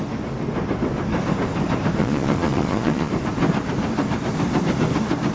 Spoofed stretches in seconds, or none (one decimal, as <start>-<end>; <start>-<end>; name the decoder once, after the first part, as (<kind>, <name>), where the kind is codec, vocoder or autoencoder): 2.0-3.1 (vocoder, Vocos)